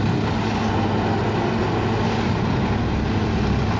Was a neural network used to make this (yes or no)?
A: no